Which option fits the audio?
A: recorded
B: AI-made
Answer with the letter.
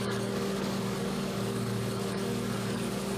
B